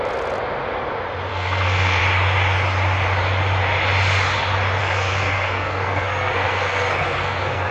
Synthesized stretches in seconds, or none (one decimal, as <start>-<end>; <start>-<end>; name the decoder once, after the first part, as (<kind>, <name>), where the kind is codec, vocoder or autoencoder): 1.3-2.0 (codec, SNAC); 4.8-7.7